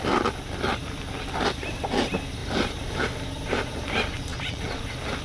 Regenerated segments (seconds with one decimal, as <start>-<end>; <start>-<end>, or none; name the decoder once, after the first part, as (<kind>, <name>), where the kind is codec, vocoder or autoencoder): 4.3-4.8 (vocoder, Vocos)